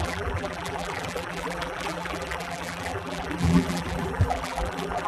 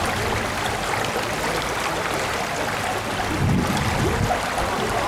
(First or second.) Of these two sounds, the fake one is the first